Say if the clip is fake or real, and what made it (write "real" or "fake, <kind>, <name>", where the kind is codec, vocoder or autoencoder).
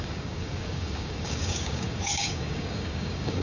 fake, codec, DAC